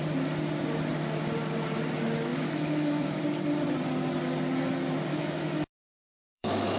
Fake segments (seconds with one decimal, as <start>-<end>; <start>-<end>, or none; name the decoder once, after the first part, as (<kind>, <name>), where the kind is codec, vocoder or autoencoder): 2.3-3.2 (autoencoder, DAC-VAE); 5.1-6.8